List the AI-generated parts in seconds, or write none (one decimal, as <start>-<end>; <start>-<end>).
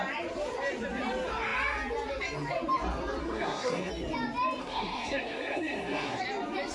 3.2-3.9; 4.6-6.2